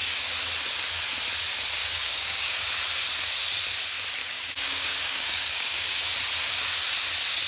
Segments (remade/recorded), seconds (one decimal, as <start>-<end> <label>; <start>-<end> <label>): 0.0-1.8 recorded; 1.8-2.6 remade; 2.6-4.2 recorded; 4.2-6.0 remade; 6.0-7.5 recorded